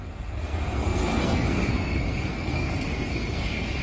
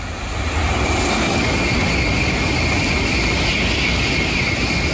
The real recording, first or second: second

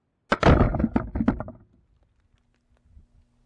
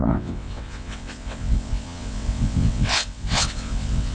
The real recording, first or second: first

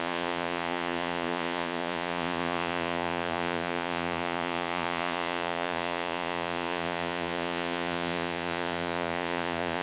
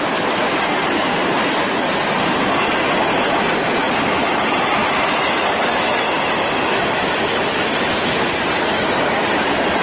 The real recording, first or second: second